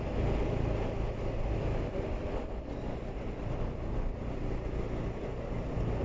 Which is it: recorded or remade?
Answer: recorded